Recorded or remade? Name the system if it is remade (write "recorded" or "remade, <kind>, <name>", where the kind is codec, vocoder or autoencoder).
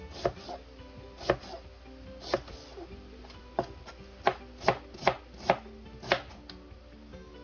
recorded